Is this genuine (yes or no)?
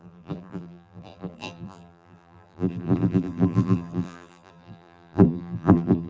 no